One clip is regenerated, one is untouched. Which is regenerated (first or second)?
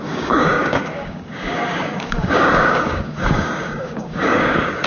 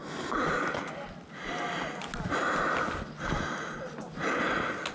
first